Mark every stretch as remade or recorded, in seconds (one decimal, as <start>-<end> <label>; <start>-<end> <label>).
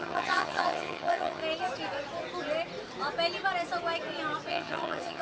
0.0-1.4 remade; 1.4-4.5 recorded; 4.5-5.2 remade